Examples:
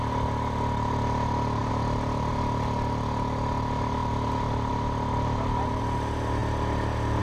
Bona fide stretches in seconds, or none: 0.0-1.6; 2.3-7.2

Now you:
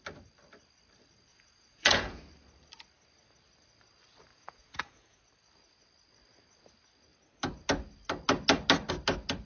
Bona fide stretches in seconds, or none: 0.0-1.3; 2.2-4.3; 5.2-9.5

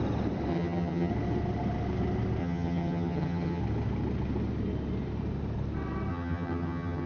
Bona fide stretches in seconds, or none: 0.0-0.5; 1.1-2.4; 3.6-6.1

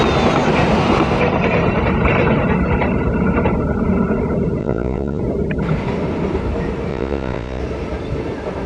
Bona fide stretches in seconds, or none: 0.0-4.6; 5.2-6.9; 7.6-8.7

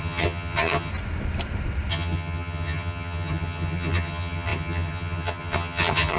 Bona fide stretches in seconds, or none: 0.9-1.9